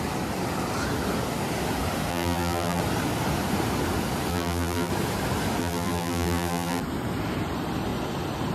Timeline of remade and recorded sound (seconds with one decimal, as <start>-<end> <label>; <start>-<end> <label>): 0.0-2.1 recorded; 2.1-2.8 remade; 2.8-4.3 recorded; 4.3-4.9 remade; 4.9-5.6 recorded; 5.6-6.8 remade; 6.8-8.5 recorded

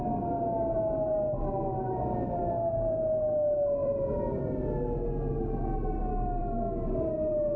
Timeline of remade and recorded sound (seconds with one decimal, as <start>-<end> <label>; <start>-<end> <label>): 0.0-3.8 recorded; 3.8-4.4 remade; 4.4-7.6 recorded

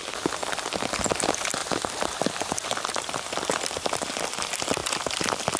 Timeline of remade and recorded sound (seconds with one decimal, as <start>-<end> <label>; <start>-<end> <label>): 0.0-1.6 recorded; 1.6-4.1 remade; 4.1-5.6 recorded

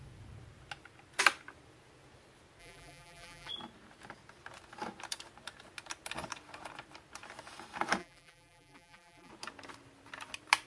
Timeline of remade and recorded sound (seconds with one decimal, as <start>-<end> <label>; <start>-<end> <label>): 0.0-2.6 recorded; 2.6-3.5 remade; 3.5-8.0 recorded; 8.0-9.3 remade; 9.3-10.7 recorded